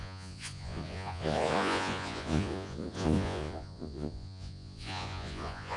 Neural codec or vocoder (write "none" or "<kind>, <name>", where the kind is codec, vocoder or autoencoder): vocoder, Vocos